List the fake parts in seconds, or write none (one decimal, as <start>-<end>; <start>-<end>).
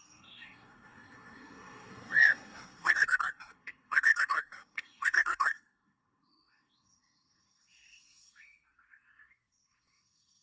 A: 0.0-10.4